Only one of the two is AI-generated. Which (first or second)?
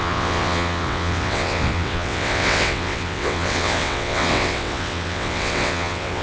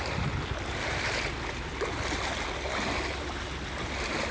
first